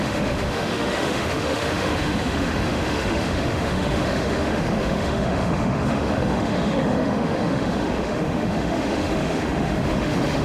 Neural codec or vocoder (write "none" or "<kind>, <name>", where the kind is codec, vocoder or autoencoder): autoencoder, DAC-VAE